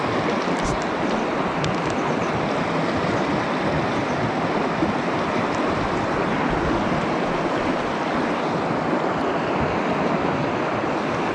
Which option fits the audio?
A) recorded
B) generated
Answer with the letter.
A